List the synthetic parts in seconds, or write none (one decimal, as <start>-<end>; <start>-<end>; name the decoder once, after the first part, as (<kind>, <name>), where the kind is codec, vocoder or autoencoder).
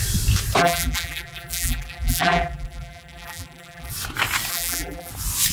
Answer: 0.6-3.9 (vocoder, BigVGAN v2); 4.5-5.1